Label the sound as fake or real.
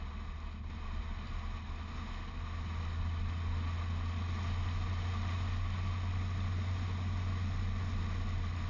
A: real